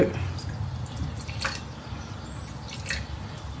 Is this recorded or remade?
recorded